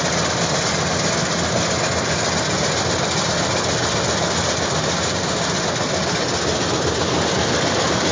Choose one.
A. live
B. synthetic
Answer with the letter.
A